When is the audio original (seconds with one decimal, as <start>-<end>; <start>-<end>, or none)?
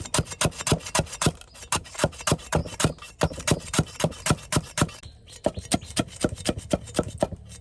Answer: 0.0-7.6